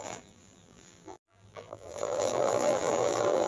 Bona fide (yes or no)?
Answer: no